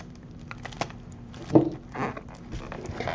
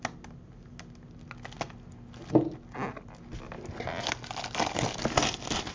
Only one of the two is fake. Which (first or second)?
first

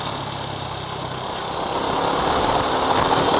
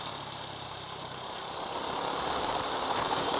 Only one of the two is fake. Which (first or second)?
second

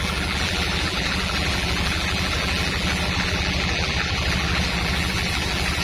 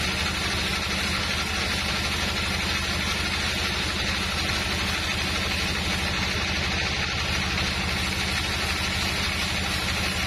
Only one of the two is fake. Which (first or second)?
first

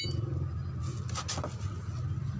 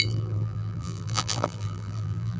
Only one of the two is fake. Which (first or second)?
second